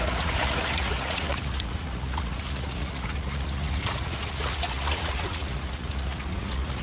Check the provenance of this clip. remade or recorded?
remade